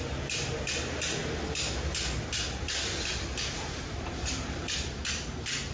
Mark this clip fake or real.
real